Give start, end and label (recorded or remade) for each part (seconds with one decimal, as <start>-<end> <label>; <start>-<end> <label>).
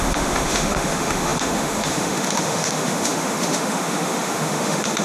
0.0-5.0 remade